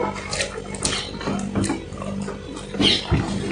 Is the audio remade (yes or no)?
no